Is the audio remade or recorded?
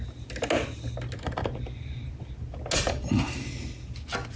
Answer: recorded